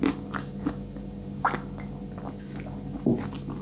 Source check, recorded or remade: recorded